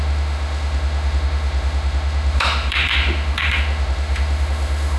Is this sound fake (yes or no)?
yes